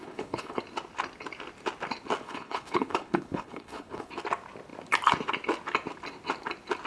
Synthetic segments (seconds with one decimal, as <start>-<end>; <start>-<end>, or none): 0.0-0.6; 2.2-4.1